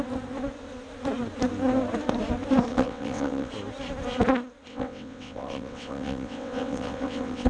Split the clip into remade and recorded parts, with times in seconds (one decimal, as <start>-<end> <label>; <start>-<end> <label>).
0.0-2.7 recorded; 2.7-3.5 remade; 3.5-4.7 recorded; 4.7-7.5 remade